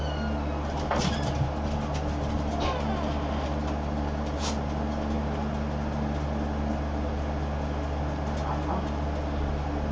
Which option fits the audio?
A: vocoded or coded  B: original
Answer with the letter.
B